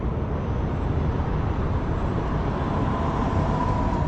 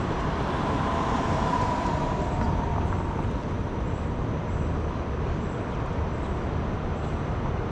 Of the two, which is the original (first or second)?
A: first